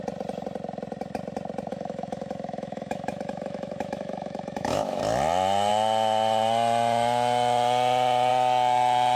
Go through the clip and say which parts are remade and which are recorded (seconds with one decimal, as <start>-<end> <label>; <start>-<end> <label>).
0.0-1.7 recorded; 1.7-5.0 remade; 5.0-9.2 recorded